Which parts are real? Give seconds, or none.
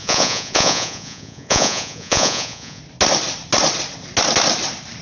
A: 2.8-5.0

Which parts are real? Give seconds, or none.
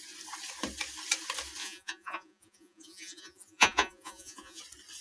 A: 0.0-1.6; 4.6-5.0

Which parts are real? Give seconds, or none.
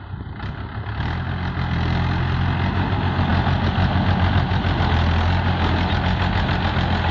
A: 0.0-7.1